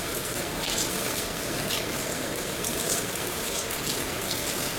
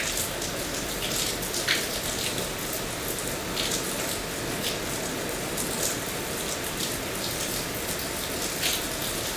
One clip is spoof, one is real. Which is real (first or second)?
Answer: second